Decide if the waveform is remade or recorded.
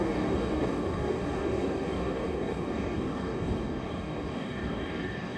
remade